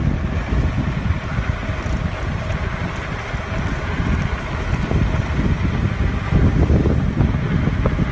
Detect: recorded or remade recorded